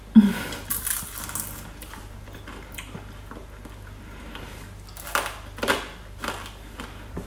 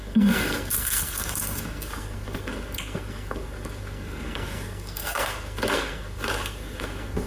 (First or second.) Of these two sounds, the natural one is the first